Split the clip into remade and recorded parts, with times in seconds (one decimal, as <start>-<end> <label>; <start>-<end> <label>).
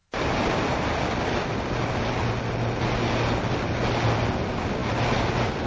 0.0-5.7 recorded